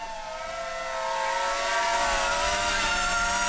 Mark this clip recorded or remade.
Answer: recorded